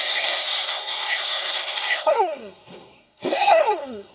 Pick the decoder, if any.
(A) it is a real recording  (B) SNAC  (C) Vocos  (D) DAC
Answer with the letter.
B